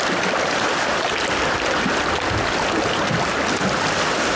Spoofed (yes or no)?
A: no